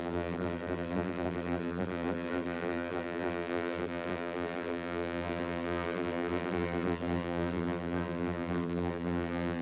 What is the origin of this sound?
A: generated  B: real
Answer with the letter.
A